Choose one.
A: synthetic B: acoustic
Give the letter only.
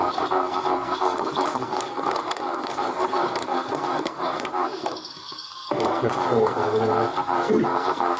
A